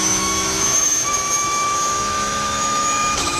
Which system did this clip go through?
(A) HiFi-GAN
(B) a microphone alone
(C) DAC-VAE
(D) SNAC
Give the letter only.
C